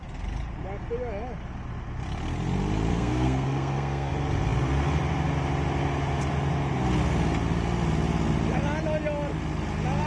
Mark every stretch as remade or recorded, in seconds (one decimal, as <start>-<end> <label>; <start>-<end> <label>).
0.0-2.9 recorded; 2.9-4.1 remade; 4.1-10.1 recorded